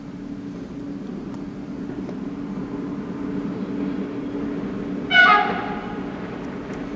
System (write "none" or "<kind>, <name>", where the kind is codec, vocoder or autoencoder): none